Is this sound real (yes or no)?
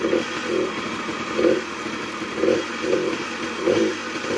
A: yes